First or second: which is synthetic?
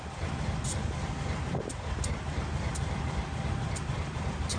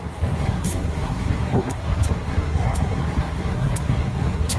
second